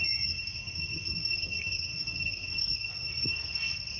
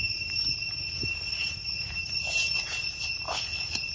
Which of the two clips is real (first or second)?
second